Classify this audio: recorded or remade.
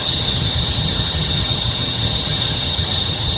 remade